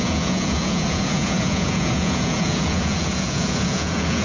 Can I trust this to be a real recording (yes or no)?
no